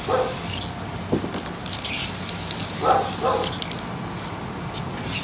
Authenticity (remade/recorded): recorded